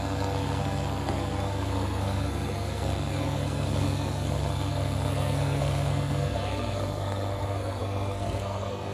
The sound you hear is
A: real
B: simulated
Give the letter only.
B